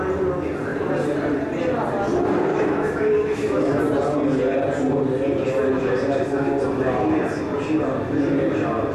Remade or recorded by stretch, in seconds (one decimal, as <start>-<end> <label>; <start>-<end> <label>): 0.0-2.5 recorded; 2.5-3.8 remade; 3.8-8.9 recorded